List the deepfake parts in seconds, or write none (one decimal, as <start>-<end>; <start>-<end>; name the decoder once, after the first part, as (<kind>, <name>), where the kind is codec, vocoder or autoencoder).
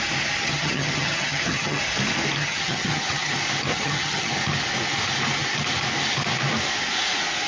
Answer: 0.4-1.8 (vocoder, HiFi-GAN); 2.4-3.3; 3.7-4.3